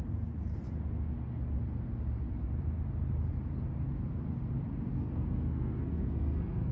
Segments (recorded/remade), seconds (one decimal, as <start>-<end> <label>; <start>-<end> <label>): 0.0-4.9 recorded; 4.9-6.7 remade